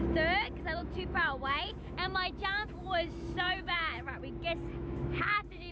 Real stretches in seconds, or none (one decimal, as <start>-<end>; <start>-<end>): 0.0-0.8; 4.2-4.7